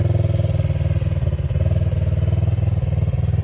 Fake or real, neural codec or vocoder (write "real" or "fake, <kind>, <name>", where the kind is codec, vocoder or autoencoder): real